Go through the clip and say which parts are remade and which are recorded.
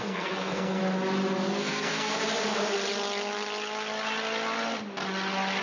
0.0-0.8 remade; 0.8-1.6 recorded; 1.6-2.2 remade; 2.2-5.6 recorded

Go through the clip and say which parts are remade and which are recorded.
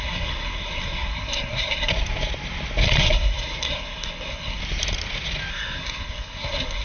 0.0-1.9 remade; 1.9-3.0 recorded; 3.0-4.6 remade; 4.6-5.5 recorded; 5.5-6.8 remade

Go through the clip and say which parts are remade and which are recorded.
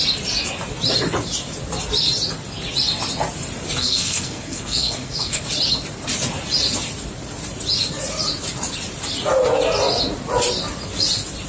0.0-3.8 recorded; 3.8-5.4 remade; 5.4-11.5 recorded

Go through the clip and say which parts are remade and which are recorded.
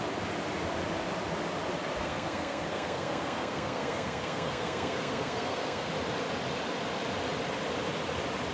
0.0-2.0 recorded; 2.0-5.9 remade; 5.9-8.5 recorded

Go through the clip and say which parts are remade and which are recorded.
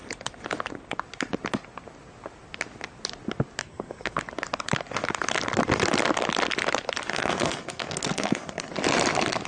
0.0-3.6 recorded; 3.6-4.2 remade; 4.2-7.1 recorded; 7.1-8.7 remade; 8.7-9.5 recorded